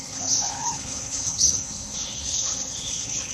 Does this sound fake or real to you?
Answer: fake